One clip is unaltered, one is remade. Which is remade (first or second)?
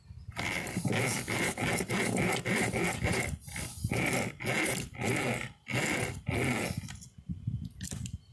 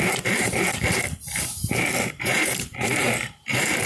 second